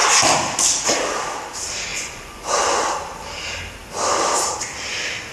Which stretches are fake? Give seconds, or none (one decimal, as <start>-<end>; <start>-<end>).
1.9-2.6